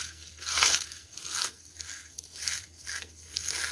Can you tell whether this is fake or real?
fake